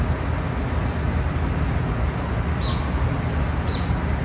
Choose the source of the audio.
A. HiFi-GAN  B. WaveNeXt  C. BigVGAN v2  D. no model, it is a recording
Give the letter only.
D